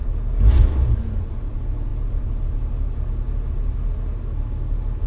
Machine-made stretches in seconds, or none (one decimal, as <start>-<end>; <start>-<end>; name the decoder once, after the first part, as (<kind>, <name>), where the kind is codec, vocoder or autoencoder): none